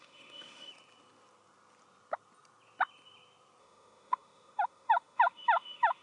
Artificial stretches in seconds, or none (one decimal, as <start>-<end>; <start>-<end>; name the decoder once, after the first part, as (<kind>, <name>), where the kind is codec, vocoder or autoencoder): 0.0-0.7 (autoencoder, DAC-VAE); 3.6-6.0